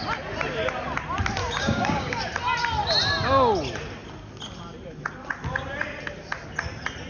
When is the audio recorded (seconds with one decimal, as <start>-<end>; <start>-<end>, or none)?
0.0-1.4; 2.2-7.1